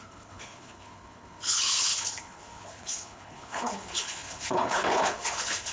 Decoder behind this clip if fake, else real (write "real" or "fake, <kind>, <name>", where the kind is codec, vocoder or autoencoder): fake, codec, HILCodec